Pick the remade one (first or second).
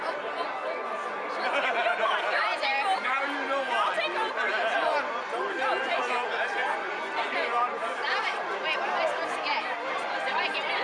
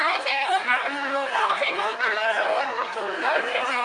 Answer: second